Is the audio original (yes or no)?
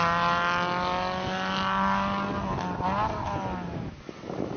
yes